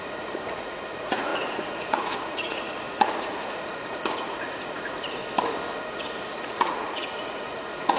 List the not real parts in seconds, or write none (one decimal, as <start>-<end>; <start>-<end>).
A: 0.0-5.2; 5.9-8.0